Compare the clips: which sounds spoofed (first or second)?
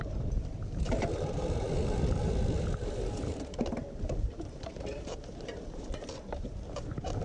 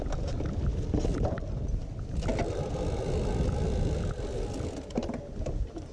first